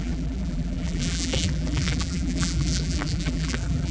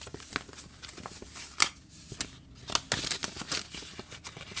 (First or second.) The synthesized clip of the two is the first